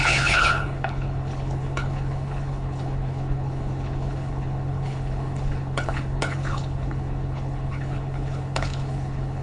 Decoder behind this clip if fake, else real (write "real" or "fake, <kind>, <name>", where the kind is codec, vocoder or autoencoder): fake, codec, HILCodec